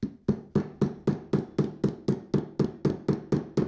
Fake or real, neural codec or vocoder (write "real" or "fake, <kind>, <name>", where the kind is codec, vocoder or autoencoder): real